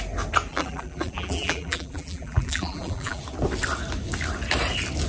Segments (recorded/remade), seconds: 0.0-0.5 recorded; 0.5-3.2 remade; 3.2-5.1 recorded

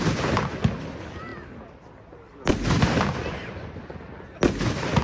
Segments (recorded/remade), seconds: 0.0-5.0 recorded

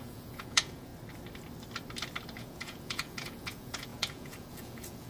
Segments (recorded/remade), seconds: 0.0-0.9 remade; 0.9-2.4 recorded; 2.4-5.1 remade

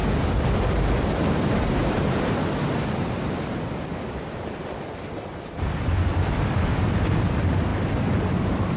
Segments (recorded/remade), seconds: 0.0-8.8 remade